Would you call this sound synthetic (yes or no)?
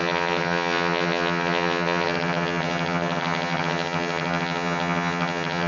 yes